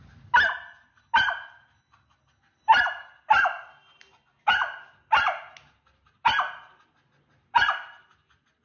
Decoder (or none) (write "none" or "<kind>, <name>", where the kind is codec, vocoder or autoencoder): none